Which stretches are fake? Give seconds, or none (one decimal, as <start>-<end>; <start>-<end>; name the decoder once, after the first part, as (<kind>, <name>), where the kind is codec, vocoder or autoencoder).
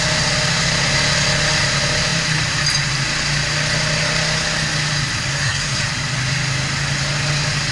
5.3-5.8 (codec, SNAC)